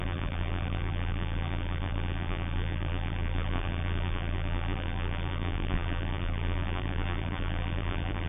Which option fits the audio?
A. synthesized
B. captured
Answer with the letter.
A